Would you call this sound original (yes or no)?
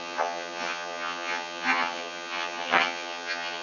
no